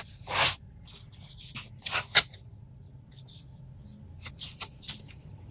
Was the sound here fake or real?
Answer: real